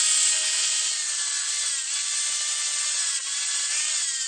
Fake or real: real